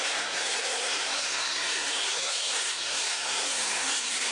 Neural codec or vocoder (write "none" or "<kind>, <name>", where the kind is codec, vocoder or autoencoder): codec, SNAC